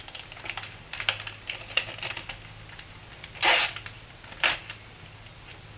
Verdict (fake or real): real